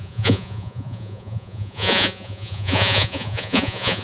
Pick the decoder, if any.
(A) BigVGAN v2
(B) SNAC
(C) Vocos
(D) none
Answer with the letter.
C